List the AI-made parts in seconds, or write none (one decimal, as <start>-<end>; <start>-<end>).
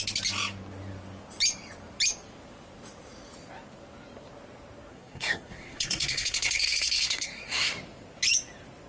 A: 4.9-7.7